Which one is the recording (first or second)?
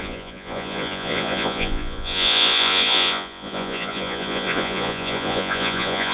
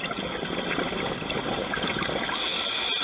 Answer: second